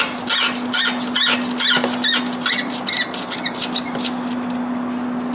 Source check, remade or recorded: recorded